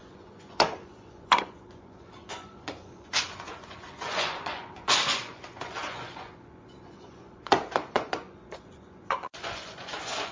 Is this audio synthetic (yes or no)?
yes